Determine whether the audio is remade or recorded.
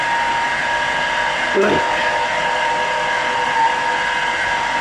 recorded